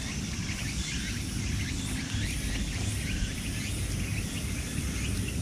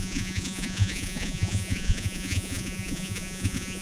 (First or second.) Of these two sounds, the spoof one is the second